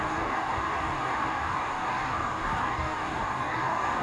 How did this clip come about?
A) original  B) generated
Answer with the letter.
B